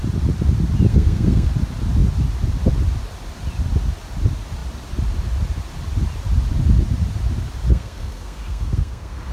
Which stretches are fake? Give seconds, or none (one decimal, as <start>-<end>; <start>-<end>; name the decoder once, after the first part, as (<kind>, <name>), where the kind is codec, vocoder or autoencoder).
0.9-1.5 (codec, SNAC); 7.7-9.3